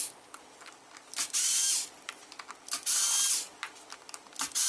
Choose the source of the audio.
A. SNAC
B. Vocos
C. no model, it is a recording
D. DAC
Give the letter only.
C